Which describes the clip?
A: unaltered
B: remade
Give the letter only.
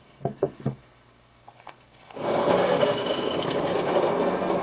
B